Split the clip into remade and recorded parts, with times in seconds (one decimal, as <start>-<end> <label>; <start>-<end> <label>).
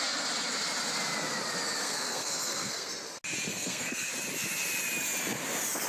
0.0-1.8 recorded; 1.8-2.9 remade; 2.9-3.5 recorded; 3.5-4.1 remade; 4.1-5.9 recorded